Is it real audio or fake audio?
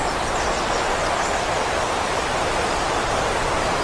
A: fake